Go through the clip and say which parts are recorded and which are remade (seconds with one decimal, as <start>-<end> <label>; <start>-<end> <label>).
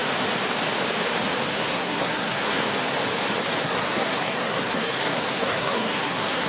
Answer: 0.0-1.5 recorded; 1.5-2.7 remade; 2.7-3.6 recorded; 3.6-6.5 remade